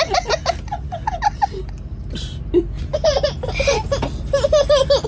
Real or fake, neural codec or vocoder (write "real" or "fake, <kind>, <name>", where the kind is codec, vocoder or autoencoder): real